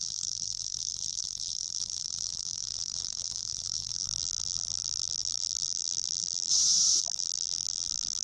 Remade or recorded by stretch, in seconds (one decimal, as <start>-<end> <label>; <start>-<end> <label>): 0.0-6.5 remade; 6.5-7.0 recorded; 7.0-8.2 remade